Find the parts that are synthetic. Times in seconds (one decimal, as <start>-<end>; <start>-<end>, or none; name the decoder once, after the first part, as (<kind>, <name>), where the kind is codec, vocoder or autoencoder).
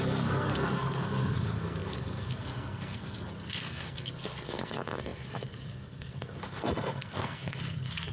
0.0-8.1 (codec, SNAC)